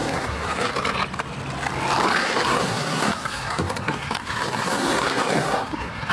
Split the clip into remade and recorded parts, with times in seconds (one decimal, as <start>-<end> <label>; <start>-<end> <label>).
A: 0.0-0.7 remade; 0.7-2.2 recorded; 2.2-6.1 remade